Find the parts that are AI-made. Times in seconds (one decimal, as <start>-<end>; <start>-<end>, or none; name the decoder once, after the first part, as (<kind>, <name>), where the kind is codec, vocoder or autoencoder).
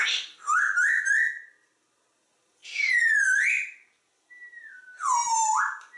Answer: none